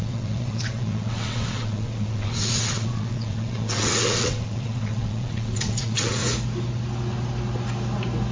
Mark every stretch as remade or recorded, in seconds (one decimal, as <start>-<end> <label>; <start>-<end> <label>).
0.0-6.2 remade; 6.2-8.3 recorded